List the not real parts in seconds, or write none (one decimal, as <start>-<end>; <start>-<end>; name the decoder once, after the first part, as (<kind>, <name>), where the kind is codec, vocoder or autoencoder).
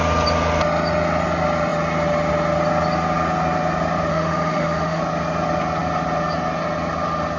4.1-5.0 (autoencoder, DAC-VAE)